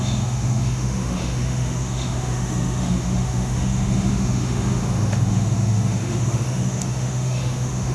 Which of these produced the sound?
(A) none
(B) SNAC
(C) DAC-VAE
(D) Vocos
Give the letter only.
C